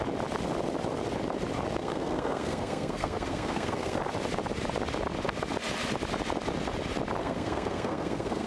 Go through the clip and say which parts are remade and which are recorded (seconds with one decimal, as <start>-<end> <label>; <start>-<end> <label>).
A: 0.0-1.8 recorded; 1.8-4.0 remade; 4.0-7.2 recorded; 7.2-8.5 remade